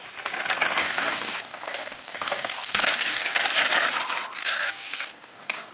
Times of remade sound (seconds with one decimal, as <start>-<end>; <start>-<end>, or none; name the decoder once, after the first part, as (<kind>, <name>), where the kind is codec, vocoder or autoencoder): 0.8-3.4 (codec, DAC); 4.4-5.7